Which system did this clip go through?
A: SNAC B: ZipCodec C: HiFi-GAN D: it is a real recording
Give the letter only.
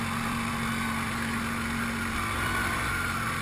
D